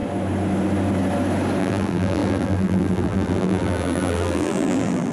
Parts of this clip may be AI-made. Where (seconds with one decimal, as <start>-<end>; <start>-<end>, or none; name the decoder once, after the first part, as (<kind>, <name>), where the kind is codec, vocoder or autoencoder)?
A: 1.6-5.1 (vocoder, BigVGAN v2)